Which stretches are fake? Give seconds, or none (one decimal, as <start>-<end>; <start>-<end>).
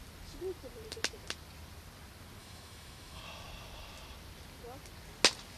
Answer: 2.4-3.2